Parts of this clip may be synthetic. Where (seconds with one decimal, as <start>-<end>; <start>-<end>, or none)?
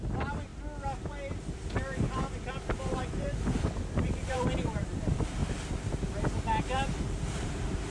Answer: 0.0-0.5; 2.9-5.4; 7.0-7.9